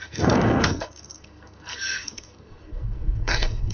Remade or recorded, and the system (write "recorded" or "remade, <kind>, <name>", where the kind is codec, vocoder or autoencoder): remade, codec, SNAC